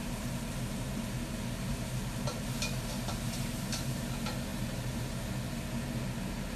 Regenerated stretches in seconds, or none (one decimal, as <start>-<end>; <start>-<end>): 0.0-4.0; 4.5-5.3